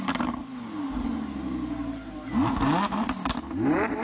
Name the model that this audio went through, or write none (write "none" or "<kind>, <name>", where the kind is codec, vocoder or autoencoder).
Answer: none